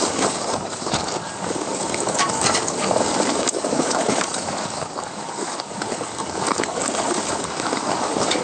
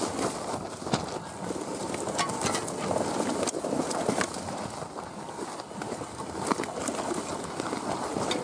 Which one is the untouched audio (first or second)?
second